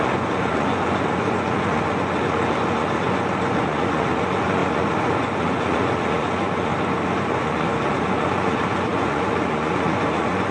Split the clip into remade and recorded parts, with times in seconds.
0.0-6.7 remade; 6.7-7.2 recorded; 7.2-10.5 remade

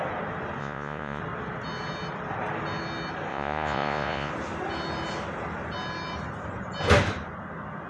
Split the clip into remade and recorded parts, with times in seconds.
0.0-0.6 recorded; 0.6-1.2 remade; 1.2-3.3 recorded; 3.3-4.3 remade; 4.3-7.9 recorded

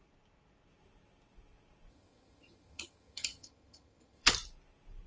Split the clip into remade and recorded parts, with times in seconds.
0.0-1.9 recorded; 1.9-4.3 remade; 4.3-5.1 recorded